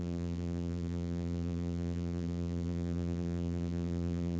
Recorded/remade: remade